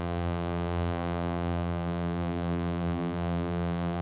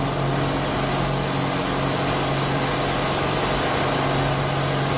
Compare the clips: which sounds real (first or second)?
second